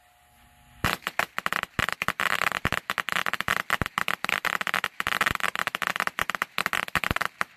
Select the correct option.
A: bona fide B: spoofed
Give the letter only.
A